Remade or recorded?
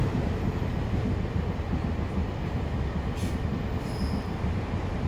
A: recorded